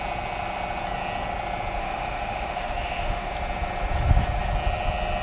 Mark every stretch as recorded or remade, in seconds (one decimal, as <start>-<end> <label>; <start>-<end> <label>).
0.0-1.8 recorded; 1.8-3.3 remade; 3.3-5.2 recorded

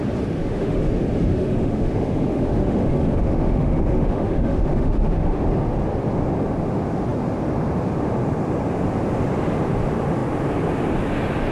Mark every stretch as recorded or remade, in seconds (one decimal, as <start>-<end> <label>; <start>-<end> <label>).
0.0-0.4 recorded; 0.4-0.9 remade; 0.9-1.3 recorded; 1.3-5.4 remade; 5.4-11.5 recorded

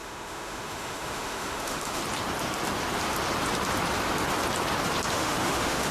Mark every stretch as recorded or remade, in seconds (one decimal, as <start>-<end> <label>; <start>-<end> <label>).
0.0-2.0 remade; 2.0-5.1 recorded; 5.1-5.9 remade

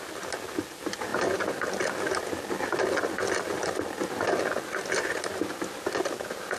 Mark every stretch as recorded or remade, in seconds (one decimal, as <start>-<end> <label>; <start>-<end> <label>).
0.0-6.6 recorded

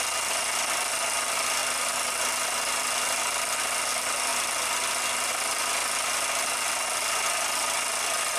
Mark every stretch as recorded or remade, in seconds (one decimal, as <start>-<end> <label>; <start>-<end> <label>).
0.0-8.4 recorded

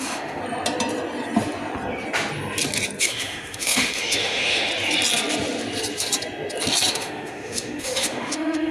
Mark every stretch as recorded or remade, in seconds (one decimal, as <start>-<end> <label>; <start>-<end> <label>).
0.0-0.4 remade; 0.4-3.0 recorded; 3.0-4.7 remade; 4.7-6.9 recorded; 6.9-8.7 remade

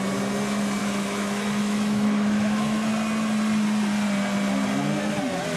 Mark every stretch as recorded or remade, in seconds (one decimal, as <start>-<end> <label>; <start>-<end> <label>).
0.0-0.8 recorded; 0.8-2.9 remade; 2.9-5.6 recorded

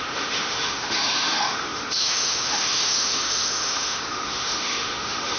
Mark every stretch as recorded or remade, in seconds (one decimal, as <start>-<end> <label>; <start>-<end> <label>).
0.0-5.4 remade